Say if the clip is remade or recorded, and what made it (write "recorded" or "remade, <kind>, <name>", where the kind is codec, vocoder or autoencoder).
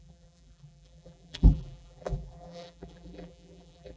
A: remade, vocoder, BigVGAN v2